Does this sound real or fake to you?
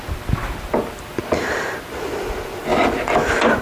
real